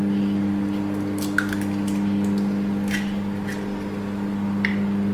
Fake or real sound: real